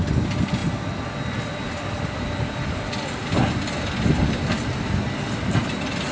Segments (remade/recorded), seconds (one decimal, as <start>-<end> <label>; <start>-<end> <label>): 0.0-6.1 recorded